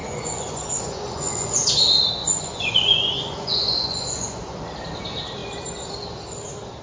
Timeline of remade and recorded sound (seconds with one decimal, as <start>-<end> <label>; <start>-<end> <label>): 0.0-1.7 remade; 1.7-2.2 recorded; 2.2-4.6 remade; 4.6-6.8 recorded